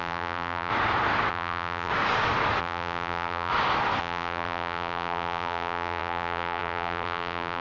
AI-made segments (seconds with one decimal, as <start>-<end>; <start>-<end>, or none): 0.0-0.7; 1.3-1.9; 2.6-3.5; 4.0-7.6